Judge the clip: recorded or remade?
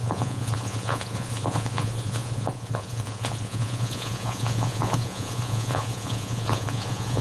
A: remade